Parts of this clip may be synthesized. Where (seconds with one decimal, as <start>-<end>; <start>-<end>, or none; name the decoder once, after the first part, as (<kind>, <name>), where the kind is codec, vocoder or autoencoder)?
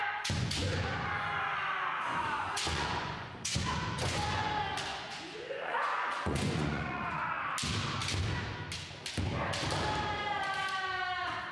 0.0-4.5 (vocoder, Vocos); 4.9-7.4